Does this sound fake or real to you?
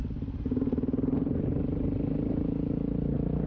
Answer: real